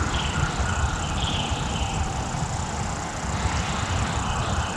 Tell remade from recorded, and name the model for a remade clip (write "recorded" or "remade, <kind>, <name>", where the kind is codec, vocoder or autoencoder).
remade, vocoder, BigVGAN v2